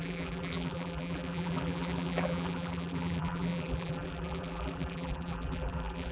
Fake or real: fake